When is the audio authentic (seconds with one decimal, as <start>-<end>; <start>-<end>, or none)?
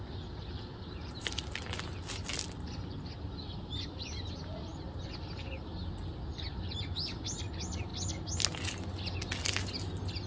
0.0-10.3